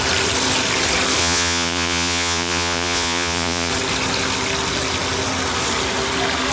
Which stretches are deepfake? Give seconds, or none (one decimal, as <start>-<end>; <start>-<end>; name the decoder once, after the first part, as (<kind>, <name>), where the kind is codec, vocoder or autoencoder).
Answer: 1.2-3.7 (vocoder, Vocos)